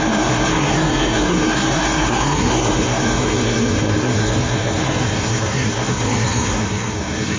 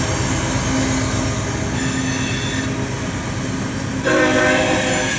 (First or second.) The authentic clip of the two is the second